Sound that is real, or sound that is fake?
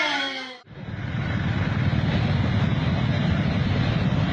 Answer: fake